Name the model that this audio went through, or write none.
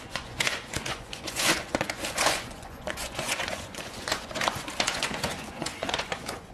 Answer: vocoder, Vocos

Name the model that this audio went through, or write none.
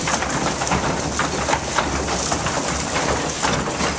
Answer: none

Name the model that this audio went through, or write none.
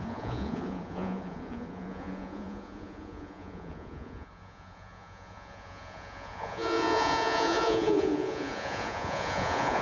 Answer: vocoder, Vocos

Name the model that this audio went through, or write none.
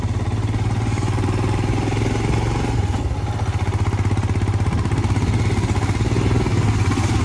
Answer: none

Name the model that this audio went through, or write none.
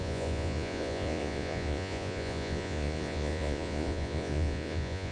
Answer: vocoder, Vocos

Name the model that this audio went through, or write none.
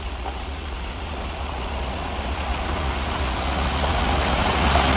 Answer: vocoder, Vocos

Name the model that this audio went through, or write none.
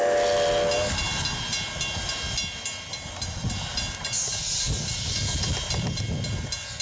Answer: none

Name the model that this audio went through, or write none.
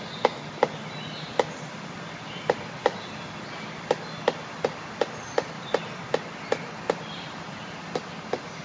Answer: none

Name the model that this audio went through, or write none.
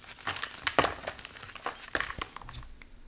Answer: none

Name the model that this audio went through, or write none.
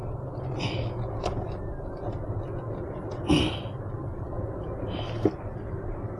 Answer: none